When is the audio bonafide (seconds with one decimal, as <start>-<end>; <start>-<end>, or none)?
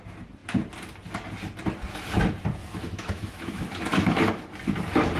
0.0-2.6; 4.3-5.2